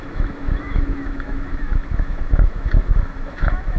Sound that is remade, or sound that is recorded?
remade